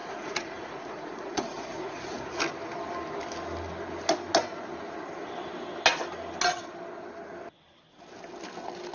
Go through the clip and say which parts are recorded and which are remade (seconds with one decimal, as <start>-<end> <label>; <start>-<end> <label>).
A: 0.0-2.4 remade; 2.4-8.9 recorded